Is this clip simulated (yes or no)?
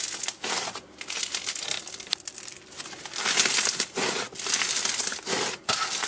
no